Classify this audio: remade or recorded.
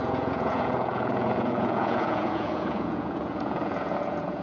remade